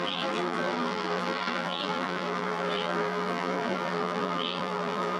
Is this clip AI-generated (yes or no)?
yes